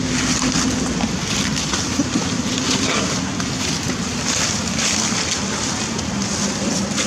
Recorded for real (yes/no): yes